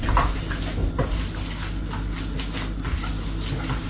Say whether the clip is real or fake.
real